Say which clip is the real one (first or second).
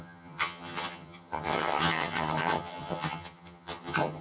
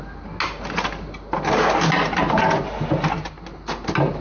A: second